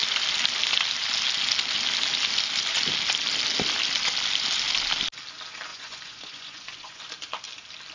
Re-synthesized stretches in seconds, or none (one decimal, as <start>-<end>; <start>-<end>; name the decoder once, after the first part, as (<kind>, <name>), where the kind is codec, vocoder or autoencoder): 5.7-7.0 (vocoder, Vocos)